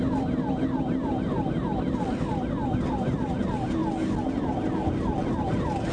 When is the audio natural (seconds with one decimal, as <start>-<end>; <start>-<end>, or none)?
0.0-5.9